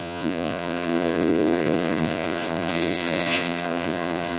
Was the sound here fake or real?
fake